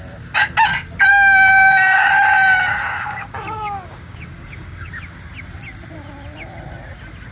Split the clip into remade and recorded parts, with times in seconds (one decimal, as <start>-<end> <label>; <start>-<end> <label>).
0.0-1.1 recorded; 1.1-2.1 remade; 2.1-2.8 recorded; 2.8-4.9 remade; 4.9-7.3 recorded